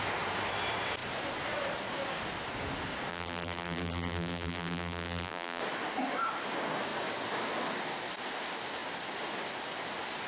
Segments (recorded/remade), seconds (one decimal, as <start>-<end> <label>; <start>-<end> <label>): 0.0-3.1 recorded; 3.1-5.6 remade; 5.6-10.3 recorded